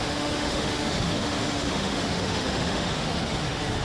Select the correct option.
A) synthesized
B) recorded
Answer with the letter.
A